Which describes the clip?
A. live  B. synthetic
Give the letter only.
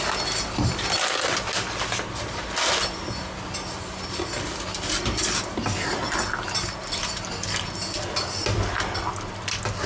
A